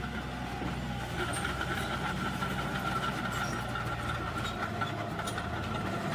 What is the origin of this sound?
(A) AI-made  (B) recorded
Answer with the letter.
B